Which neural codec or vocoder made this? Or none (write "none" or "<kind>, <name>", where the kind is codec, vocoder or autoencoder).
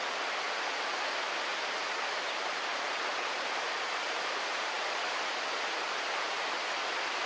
none